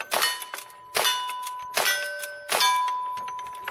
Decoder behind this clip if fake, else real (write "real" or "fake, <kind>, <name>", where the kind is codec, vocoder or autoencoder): real